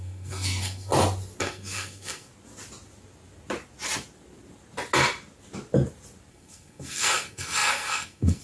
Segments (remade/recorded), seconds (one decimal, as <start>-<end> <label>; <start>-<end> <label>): 0.0-0.9 remade; 0.9-1.4 recorded; 1.4-2.3 remade; 2.3-6.3 recorded; 6.3-8.4 remade